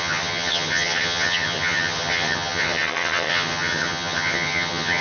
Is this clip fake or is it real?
fake